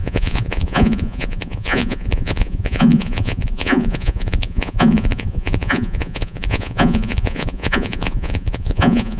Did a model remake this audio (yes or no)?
yes